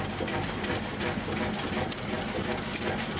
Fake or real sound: real